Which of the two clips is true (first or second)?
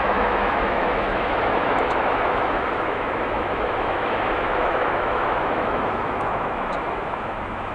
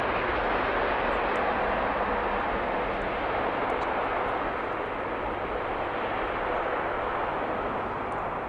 second